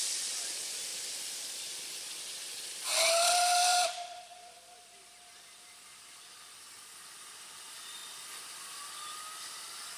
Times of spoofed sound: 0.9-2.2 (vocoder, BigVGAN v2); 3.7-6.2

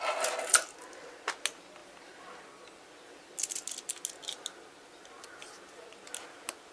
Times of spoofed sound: 1.8-2.8 (vocoder, BigVGAN v2)

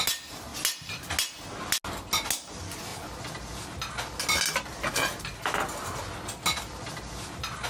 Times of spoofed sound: none

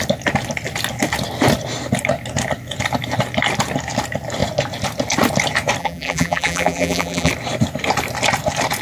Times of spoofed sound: 5.8-7.3 (vocoder, BigVGAN v2)

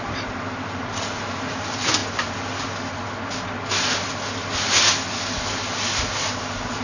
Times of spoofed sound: 0.0-2.0 (vocoder, BigVGAN v2); 6.1-6.8

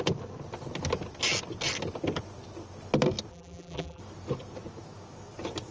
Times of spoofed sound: 3.3-4.0 (vocoder, BigVGAN v2)

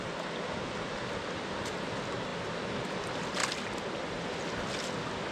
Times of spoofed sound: none